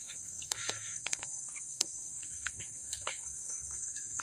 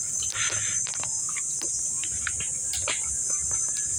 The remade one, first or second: first